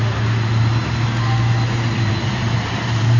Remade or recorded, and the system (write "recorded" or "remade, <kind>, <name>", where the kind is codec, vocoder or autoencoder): recorded